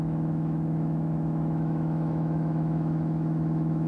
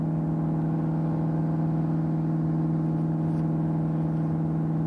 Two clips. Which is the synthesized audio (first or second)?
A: first